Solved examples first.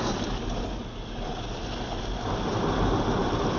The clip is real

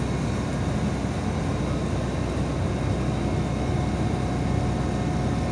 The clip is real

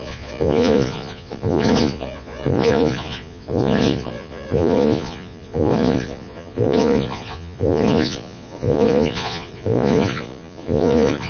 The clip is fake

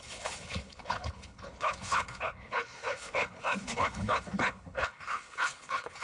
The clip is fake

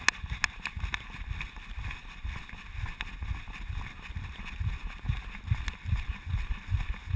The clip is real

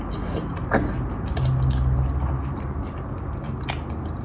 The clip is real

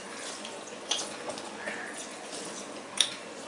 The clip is fake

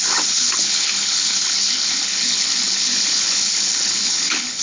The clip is fake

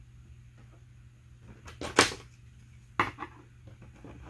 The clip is real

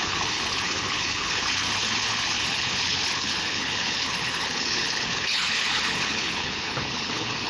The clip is fake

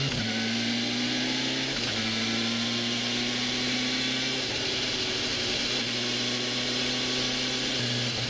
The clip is real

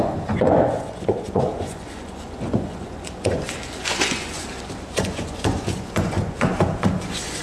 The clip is fake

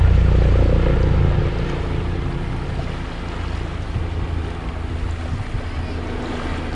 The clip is real